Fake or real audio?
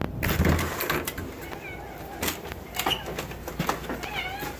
real